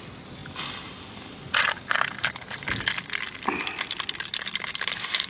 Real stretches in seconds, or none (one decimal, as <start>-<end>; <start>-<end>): 0.0-5.3